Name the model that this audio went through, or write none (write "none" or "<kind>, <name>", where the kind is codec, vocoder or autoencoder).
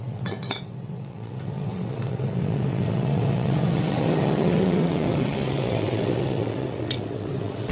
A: vocoder, WaveNeXt